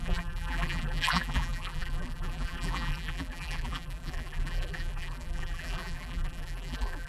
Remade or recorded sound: remade